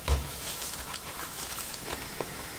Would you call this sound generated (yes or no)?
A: yes